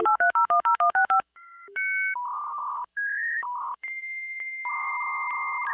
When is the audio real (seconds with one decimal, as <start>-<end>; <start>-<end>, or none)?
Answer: 4.9-5.7